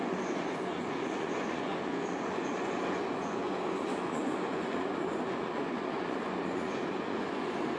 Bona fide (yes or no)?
no